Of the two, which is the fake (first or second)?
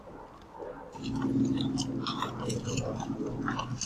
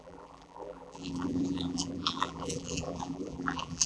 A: second